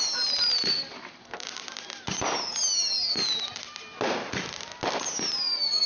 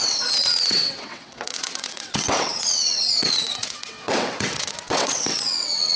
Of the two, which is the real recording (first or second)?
first